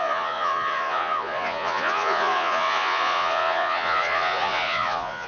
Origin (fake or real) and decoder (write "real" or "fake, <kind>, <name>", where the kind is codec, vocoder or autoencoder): fake, vocoder, Vocos